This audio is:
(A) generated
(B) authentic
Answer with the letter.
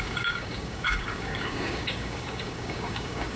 A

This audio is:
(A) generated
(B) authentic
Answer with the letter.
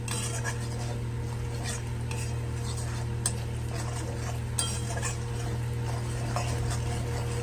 B